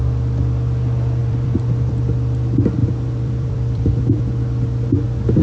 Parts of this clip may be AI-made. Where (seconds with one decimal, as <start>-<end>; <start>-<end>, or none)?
1.2-1.9; 2.8-4.2